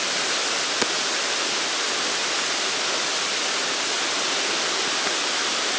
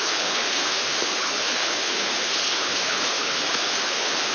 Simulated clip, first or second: second